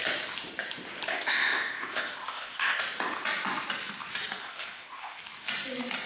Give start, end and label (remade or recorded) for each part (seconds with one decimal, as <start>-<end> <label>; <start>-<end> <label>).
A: 0.0-1.1 recorded; 1.1-2.8 remade; 2.8-4.4 recorded; 4.4-5.2 remade; 5.2-6.1 recorded